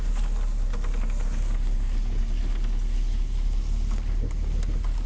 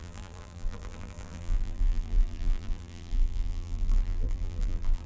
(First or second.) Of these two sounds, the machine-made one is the second